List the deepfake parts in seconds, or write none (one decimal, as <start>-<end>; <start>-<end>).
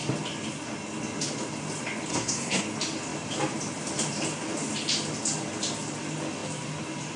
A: 2.1-2.6